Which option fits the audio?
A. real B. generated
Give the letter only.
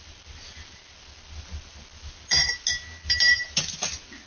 A